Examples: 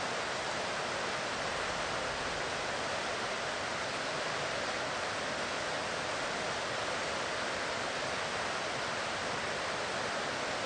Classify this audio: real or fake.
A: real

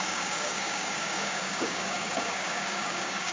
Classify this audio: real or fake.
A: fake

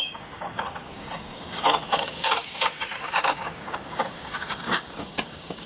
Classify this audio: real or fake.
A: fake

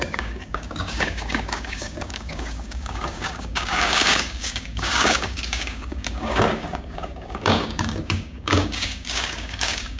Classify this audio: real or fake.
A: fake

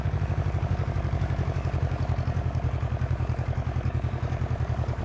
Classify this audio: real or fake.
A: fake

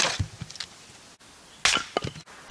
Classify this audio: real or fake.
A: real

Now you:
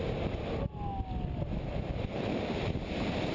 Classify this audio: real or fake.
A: real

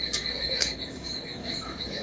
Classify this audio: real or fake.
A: fake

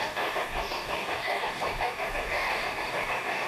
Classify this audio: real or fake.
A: fake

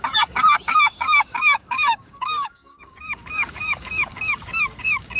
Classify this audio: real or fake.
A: fake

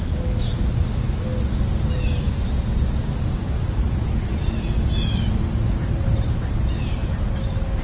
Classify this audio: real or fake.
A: real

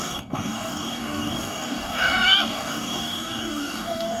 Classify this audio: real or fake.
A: fake